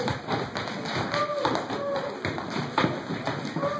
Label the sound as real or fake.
real